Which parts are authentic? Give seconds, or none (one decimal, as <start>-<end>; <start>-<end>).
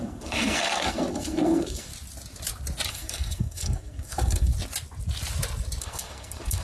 1.9-2.9; 4.5-5.8